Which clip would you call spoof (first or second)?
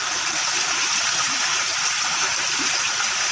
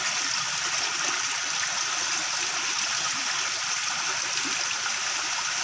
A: first